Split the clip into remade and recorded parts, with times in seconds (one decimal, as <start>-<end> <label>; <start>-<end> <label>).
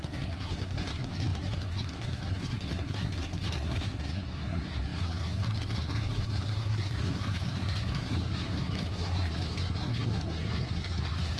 0.0-11.4 remade